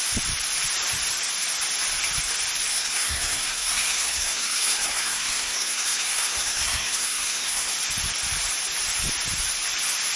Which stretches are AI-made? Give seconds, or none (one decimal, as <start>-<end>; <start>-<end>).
2.7-7.7